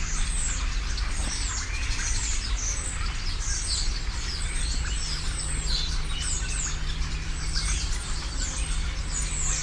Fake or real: real